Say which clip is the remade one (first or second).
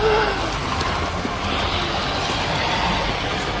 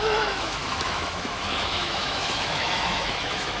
second